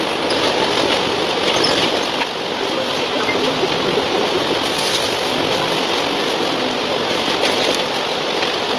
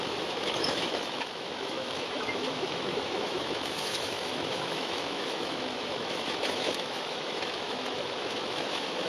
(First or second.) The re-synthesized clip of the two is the second